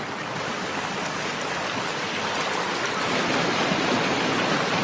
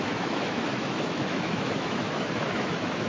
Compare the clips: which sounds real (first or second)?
first